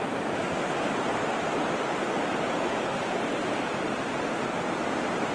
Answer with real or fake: real